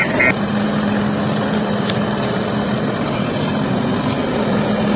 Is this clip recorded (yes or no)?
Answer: yes